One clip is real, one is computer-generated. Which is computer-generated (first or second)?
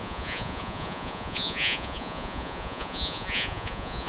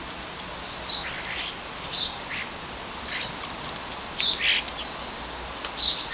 first